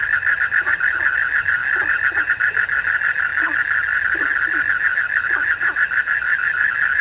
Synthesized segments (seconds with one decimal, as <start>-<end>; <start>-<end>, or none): none